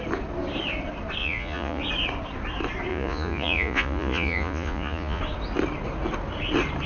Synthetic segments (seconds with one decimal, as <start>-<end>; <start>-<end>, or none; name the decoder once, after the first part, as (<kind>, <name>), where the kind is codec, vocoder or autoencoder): 1.2-1.8 (vocoder, Vocos); 2.9-5.2